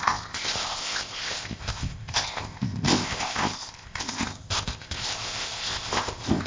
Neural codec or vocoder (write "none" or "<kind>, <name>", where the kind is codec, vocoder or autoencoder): codec, ZipCodec